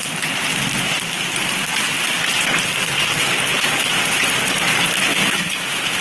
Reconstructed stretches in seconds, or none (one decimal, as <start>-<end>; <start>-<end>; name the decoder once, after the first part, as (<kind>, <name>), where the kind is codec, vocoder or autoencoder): 5.1-6.0 (autoencoder, DAC-VAE)